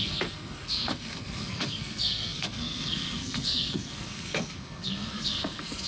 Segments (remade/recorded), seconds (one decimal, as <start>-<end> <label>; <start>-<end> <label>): 0.0-5.9 remade